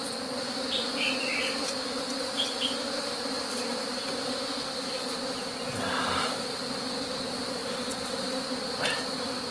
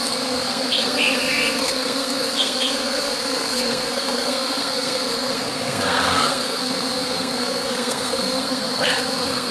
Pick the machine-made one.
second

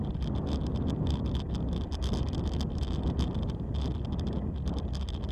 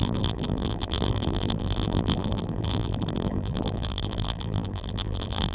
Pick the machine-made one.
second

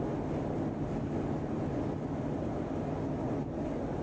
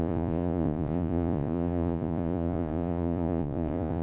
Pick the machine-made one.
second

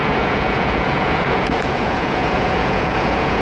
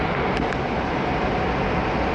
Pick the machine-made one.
first